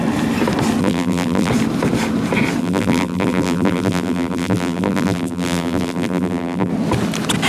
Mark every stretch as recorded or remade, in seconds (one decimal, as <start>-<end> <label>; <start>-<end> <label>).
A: 0.0-0.8 recorded; 0.8-1.5 remade; 1.5-2.6 recorded; 2.6-6.7 remade; 6.7-7.5 recorded